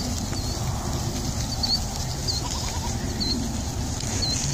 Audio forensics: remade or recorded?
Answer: recorded